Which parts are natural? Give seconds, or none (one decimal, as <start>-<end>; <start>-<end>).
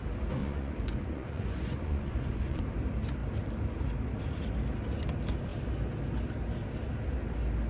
0.0-0.4; 2.6-7.7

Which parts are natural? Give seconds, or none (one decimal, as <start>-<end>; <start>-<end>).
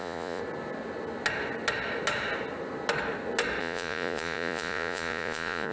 0.4-3.6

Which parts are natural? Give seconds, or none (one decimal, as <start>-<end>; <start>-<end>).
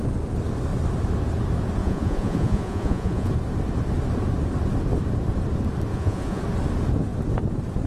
0.0-1.8; 3.3-5.9; 6.4-7.9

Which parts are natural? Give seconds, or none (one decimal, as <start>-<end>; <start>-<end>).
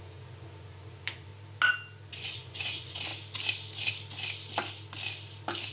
1.3-2.1; 3.1-5.7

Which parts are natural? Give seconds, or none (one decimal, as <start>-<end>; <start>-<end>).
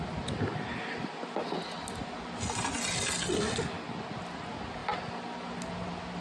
0.0-6.2